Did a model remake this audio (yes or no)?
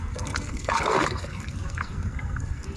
yes